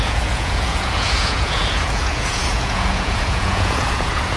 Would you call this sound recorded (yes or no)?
no